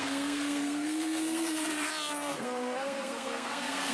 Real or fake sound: fake